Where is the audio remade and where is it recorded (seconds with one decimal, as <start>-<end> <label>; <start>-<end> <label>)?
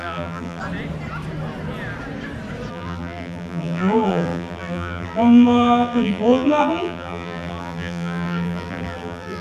0.0-0.6 remade; 0.6-2.7 recorded; 2.7-9.4 remade